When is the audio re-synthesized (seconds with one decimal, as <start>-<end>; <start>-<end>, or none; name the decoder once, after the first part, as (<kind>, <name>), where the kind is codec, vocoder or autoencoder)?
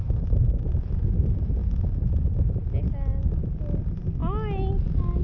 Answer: none